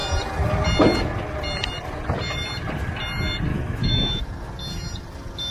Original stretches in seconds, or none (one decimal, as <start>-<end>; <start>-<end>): 0.0-3.5; 4.2-5.5